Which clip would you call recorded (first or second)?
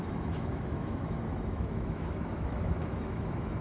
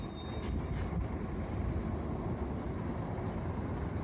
second